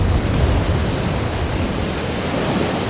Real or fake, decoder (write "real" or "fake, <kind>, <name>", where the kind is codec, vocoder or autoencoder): real